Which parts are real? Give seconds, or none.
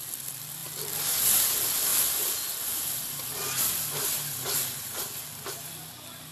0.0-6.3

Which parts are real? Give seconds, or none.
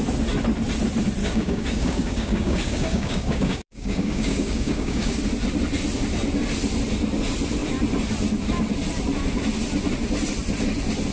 0.0-1.2; 5.2-11.1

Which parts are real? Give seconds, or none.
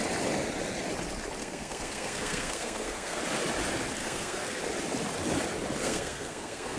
0.0-1.4; 3.2-4.0; 4.6-5.8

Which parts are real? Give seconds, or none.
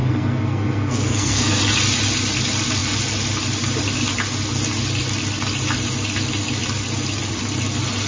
1.6-8.1